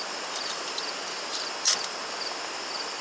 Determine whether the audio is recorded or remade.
recorded